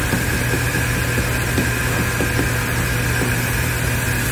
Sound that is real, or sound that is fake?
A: real